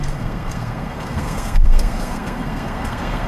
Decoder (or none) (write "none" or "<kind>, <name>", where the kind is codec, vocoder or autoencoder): codec, SNAC